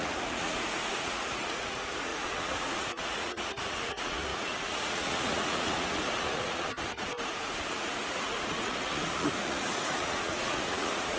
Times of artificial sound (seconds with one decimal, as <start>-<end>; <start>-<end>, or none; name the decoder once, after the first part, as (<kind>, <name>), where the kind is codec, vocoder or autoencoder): 0.0-7.1 (vocoder, Vocos); 7.7-11.2